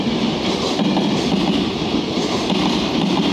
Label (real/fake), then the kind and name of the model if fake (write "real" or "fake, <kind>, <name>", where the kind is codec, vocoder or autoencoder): real